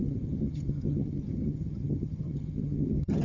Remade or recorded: remade